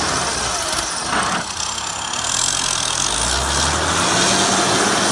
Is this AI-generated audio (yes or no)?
no